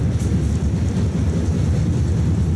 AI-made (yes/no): no